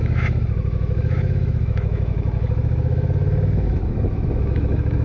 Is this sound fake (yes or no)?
yes